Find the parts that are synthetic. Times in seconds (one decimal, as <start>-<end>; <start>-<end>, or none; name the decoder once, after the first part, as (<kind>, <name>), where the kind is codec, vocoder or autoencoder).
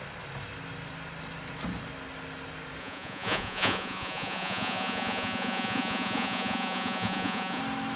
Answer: 2.8-7.6 (vocoder, Vocos)